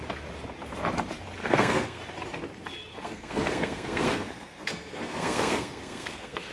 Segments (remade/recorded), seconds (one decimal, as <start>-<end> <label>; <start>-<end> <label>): 0.0-1.4 recorded; 1.4-2.0 remade; 2.0-2.9 recorded; 2.9-6.5 remade